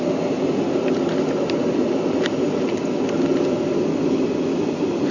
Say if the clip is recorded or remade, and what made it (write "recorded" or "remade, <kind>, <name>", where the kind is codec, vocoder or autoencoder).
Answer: recorded